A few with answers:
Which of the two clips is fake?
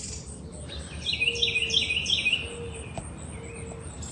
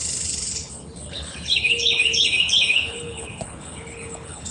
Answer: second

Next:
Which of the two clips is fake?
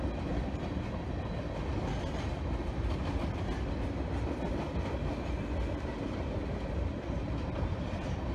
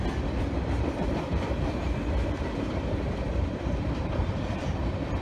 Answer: second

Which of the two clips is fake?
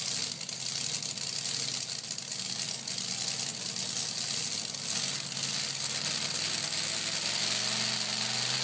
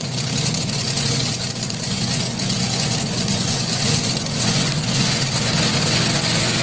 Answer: second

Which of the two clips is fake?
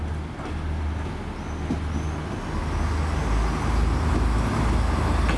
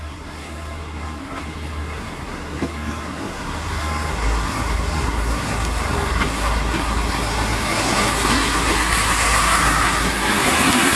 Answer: second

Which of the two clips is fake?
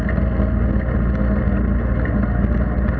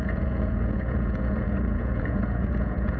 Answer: second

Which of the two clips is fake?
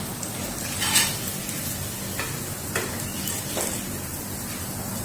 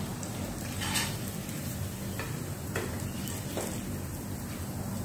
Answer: second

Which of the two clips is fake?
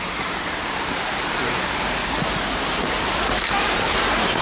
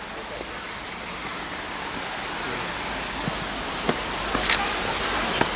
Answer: first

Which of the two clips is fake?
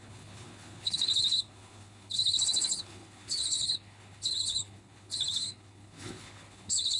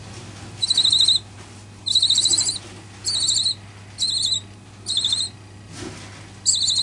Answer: first